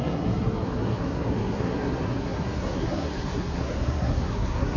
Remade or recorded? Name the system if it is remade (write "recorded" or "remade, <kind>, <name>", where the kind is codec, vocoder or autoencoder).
remade, codec, SNAC